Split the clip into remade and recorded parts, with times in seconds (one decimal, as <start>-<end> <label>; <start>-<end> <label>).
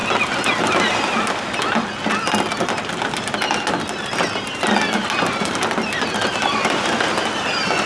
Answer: 0.0-7.9 recorded